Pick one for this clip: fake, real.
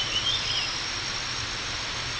real